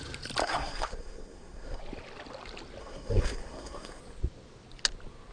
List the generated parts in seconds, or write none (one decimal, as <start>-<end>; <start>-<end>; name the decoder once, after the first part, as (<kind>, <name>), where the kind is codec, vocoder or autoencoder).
0.4-1.8 (codec, SNAC); 2.8-4.0